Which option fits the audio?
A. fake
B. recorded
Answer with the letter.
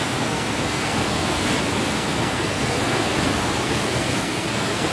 A